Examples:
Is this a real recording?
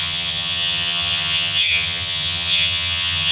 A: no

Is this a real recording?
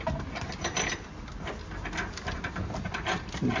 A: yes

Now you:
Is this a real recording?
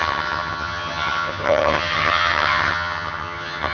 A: no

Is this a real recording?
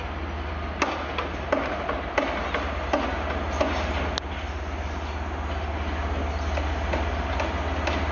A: yes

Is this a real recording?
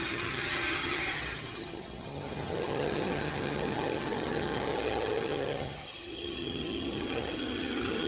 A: no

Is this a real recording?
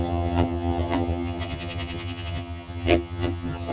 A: no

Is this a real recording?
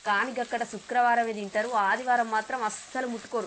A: yes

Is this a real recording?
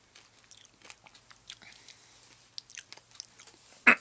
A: yes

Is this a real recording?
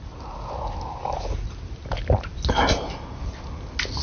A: yes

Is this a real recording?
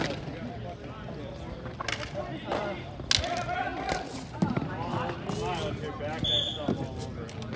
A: yes